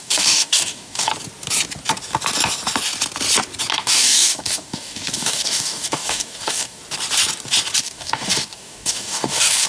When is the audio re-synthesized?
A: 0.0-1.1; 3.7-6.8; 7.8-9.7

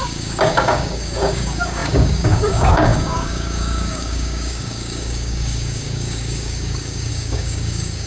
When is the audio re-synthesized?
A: 0.0-8.1

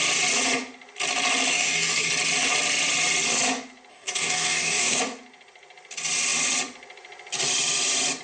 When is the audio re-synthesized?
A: 1.5-2.1; 3.9-5.0